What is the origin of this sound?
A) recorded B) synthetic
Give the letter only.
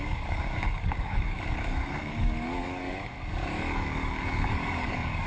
B